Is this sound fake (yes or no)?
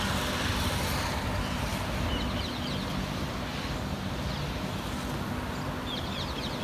no